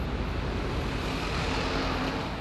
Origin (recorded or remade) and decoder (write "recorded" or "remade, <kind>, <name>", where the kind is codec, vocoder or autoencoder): recorded